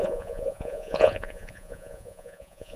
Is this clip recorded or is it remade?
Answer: remade